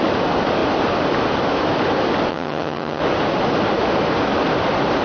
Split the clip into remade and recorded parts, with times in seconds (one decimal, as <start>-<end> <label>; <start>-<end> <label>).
0.0-2.3 recorded; 2.3-3.0 remade; 3.0-5.0 recorded